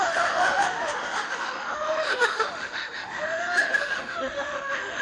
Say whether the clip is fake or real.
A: fake